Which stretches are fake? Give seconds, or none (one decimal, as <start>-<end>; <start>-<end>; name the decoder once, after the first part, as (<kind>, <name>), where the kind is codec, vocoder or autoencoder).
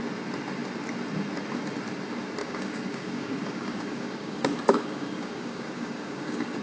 2.4-6.6 (codec, DAC)